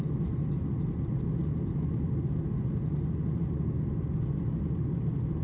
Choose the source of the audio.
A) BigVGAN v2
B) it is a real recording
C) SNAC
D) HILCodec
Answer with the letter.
B